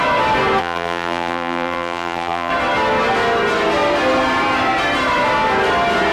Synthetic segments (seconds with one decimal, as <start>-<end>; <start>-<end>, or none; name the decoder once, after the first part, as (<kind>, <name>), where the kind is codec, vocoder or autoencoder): 0.6-2.5 (vocoder, BigVGAN v2)